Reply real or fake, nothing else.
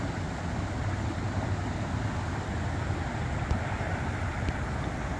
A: real